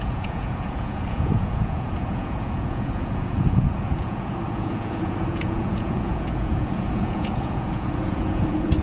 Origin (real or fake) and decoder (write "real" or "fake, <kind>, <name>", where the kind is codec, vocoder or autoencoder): fake, vocoder, Vocos